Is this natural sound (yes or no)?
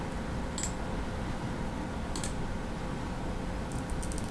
yes